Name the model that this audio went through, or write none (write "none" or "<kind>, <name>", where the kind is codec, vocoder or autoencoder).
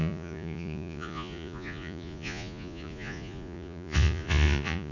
vocoder, Vocos